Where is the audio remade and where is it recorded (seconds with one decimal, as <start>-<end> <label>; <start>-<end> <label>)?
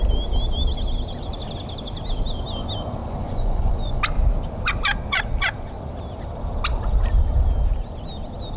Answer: 0.0-3.0 recorded; 3.0-4.0 remade; 4.0-8.6 recorded